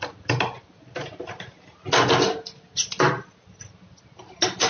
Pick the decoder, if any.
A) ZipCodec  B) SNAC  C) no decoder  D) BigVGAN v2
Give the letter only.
C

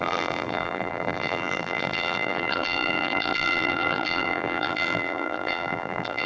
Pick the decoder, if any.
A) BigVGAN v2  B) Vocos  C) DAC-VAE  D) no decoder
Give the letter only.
A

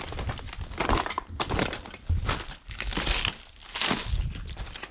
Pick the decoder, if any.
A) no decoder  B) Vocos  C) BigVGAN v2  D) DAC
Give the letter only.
A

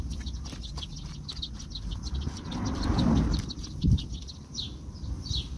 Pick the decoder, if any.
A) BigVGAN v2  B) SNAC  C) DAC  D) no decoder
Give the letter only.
D